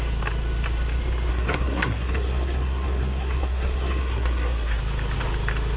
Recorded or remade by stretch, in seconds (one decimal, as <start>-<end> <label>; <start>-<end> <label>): 0.0-1.3 recorded; 1.3-4.8 remade; 4.8-5.8 recorded